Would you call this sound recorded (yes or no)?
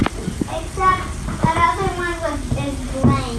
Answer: yes